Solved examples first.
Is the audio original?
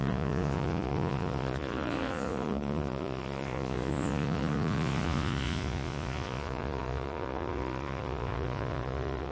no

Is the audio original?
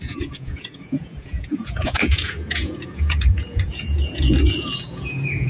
no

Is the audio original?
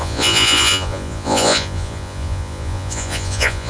no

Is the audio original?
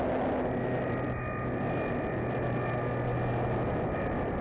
yes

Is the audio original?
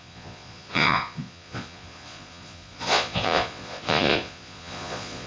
no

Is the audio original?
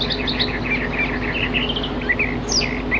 yes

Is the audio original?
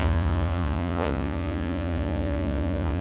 no